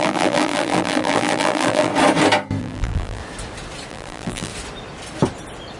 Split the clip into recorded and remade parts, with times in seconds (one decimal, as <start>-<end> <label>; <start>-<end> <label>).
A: 0.0-1.9 remade; 1.9-2.6 recorded; 2.6-3.2 remade; 3.2-3.9 recorded; 3.9-4.5 remade; 4.5-5.8 recorded